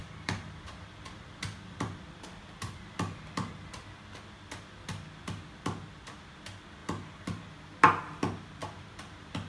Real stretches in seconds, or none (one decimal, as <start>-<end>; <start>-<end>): 3.7-6.8; 7.4-8.6